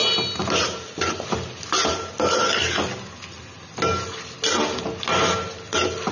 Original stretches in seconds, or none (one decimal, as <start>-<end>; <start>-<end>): 0.0-6.1